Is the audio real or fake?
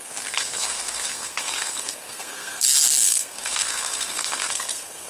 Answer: fake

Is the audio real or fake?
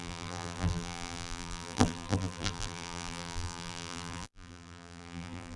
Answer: fake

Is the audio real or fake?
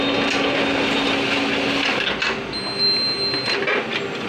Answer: real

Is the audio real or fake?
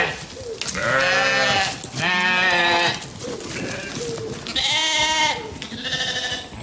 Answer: real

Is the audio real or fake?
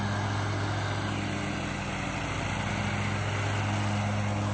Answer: real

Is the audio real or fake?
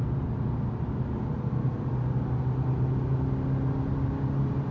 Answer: real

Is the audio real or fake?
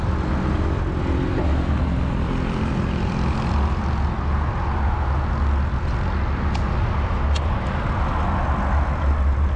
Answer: real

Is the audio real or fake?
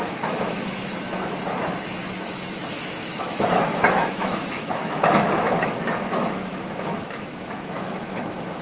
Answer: fake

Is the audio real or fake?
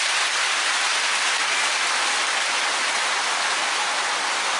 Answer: real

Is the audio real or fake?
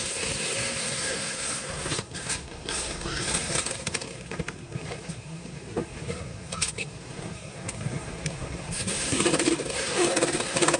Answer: fake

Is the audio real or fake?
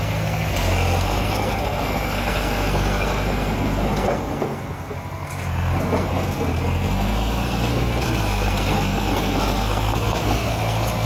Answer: fake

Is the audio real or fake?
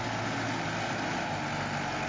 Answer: real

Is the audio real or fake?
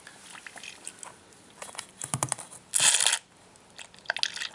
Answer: real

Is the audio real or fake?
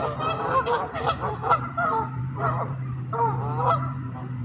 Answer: fake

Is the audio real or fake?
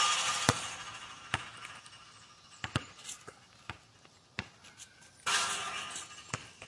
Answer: real